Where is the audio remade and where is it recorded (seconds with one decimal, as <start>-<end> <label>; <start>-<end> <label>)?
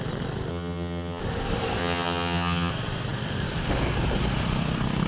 0.0-0.5 recorded; 0.5-1.2 remade; 1.2-1.8 recorded; 1.8-2.7 remade; 2.7-5.1 recorded